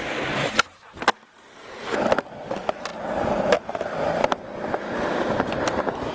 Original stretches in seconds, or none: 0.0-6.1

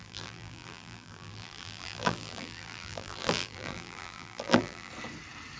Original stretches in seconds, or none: 4.9-5.6

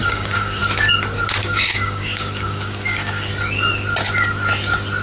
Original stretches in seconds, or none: 0.6-1.4; 3.3-5.0

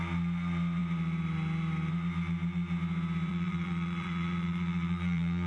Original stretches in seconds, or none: 0.0-3.3

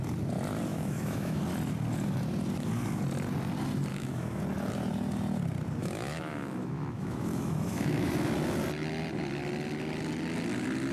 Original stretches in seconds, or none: 0.0-0.7; 1.4-3.9; 4.4-5.8; 8.1-10.9

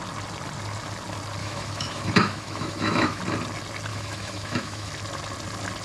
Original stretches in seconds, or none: 0.0-1.4; 3.2-3.9; 4.9-5.8